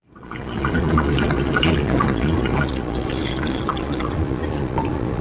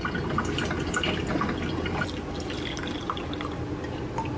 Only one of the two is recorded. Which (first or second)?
second